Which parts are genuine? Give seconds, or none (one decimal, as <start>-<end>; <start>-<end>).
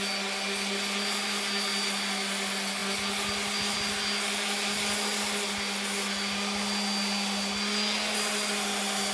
0.0-9.1